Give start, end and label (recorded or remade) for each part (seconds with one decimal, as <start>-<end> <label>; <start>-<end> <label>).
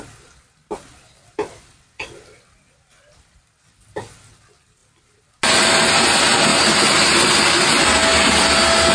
0.0-8.9 recorded